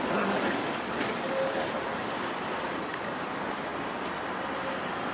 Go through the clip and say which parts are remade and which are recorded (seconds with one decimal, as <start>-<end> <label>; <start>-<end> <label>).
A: 0.0-5.1 recorded